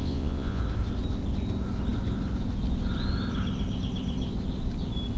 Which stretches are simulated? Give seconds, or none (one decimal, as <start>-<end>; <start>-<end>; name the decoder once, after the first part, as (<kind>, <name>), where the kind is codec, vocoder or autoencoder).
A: 0.0-0.6 (vocoder, Vocos)

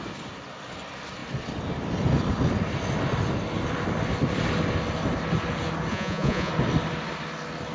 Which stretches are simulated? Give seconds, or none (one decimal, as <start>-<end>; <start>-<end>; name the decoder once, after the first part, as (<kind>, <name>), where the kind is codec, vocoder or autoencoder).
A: 5.9-6.5 (vocoder, Vocos)

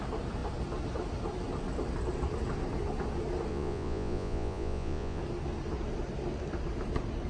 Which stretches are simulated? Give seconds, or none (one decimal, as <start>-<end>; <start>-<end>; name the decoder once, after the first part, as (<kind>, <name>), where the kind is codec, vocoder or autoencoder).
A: 3.5-5.2 (vocoder, Vocos)

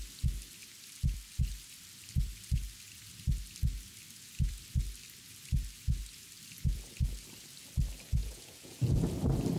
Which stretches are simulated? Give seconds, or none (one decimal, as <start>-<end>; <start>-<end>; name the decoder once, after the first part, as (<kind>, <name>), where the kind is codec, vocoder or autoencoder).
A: 8.2-9.0 (vocoder, Vocos)

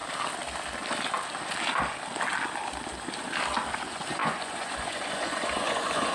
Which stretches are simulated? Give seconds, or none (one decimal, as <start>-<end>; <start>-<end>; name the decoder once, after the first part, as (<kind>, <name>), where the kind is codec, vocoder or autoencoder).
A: 3.7-6.1 (vocoder, Vocos)